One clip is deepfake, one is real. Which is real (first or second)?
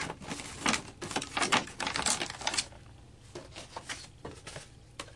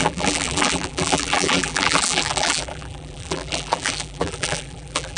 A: first